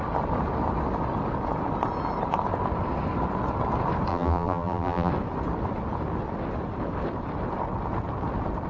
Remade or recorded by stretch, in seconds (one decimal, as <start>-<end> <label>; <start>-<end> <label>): 0.0-4.1 recorded; 4.1-5.1 remade; 5.1-8.7 recorded